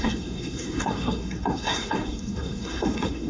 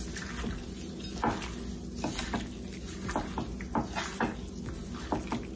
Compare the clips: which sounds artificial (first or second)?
first